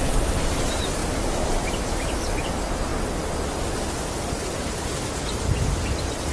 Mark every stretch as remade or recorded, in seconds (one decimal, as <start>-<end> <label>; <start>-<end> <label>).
0.0-6.3 recorded